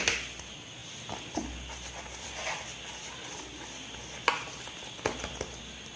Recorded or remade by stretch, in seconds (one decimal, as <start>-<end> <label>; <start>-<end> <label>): 0.0-6.0 recorded